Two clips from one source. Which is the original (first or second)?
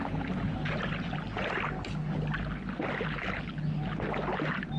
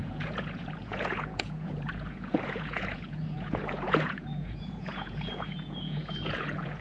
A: first